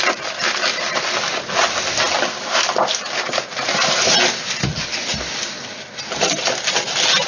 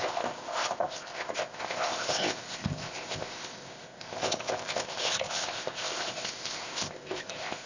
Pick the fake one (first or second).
second